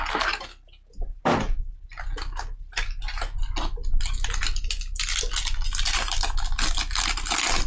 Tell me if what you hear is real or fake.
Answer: real